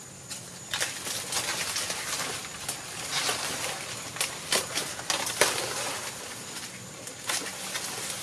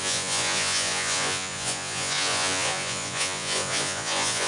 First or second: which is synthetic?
second